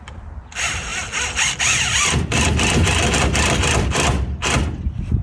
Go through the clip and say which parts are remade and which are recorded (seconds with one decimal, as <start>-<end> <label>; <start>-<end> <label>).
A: 0.0-5.2 remade